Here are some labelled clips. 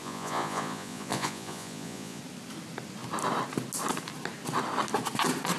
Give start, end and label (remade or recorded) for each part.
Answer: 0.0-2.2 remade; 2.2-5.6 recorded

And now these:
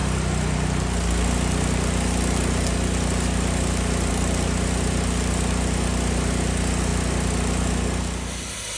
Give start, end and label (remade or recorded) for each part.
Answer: 0.0-8.8 recorded

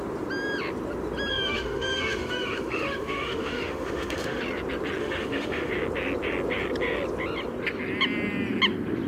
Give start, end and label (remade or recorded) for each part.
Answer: 0.0-1.3 recorded; 1.3-4.4 remade; 4.4-5.0 recorded; 5.0-5.7 remade; 5.7-9.1 recorded

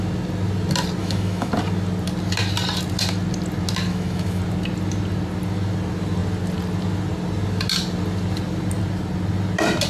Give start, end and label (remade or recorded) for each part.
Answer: 0.0-1.0 recorded; 1.0-1.5 remade; 1.5-3.9 recorded; 3.9-4.4 remade; 4.4-9.9 recorded

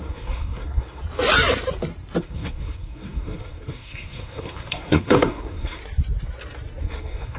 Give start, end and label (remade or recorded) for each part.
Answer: 0.0-1.0 remade; 1.0-2.2 recorded; 2.2-5.8 remade; 5.8-6.8 recorded; 6.8-7.4 remade

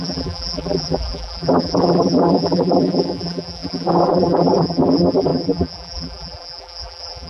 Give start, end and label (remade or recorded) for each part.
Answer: 0.0-7.3 remade